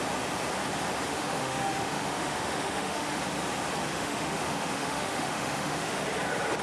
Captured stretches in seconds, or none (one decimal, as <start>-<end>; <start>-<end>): 0.0-1.1; 3.2-3.9; 6.0-6.6